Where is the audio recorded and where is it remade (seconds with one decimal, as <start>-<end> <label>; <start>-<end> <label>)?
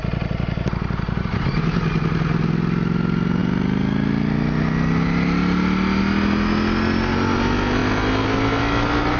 0.0-9.2 recorded